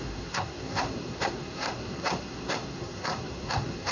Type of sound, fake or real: fake